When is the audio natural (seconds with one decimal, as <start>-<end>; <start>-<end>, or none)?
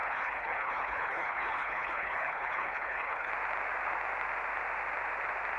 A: 3.3-5.6